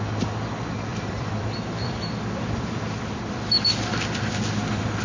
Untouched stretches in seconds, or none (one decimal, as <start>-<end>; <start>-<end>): 0.0-0.9; 3.9-5.0